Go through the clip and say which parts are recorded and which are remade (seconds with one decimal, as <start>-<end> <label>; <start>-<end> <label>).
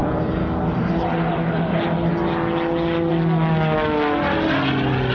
0.0-5.1 recorded